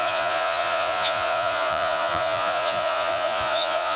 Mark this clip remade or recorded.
remade